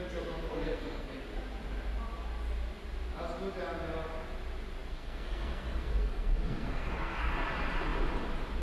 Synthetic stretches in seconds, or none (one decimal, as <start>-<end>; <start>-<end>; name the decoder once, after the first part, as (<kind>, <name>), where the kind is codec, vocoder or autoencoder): 0.5-1.2 (codec, SNAC); 4.9-7.3